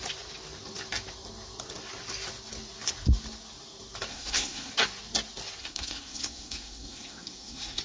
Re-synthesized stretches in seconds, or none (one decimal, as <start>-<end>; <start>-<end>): 4.1-4.7; 5.6-7.8